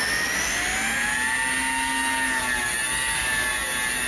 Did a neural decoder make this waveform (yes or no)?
no